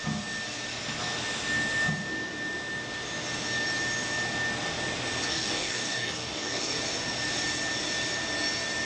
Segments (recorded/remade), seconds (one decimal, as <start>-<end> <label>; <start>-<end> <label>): 0.0-5.3 recorded; 5.3-6.8 remade; 6.8-8.9 recorded